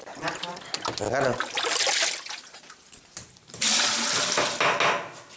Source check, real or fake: real